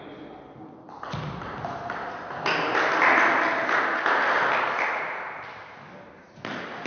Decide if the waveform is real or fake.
real